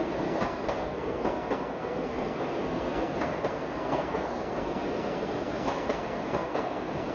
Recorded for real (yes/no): no